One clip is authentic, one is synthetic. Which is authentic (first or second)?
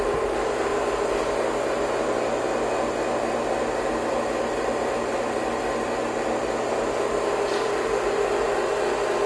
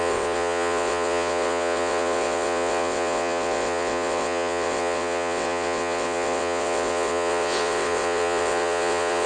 first